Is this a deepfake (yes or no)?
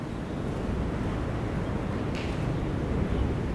no